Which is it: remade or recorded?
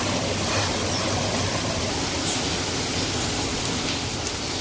recorded